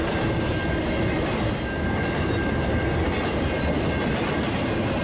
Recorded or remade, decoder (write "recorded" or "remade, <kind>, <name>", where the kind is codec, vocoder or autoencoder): recorded